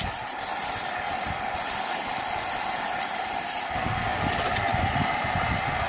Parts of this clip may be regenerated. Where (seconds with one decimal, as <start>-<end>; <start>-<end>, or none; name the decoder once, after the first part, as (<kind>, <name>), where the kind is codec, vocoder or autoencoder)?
none